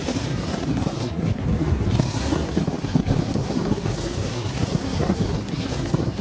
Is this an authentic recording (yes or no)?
no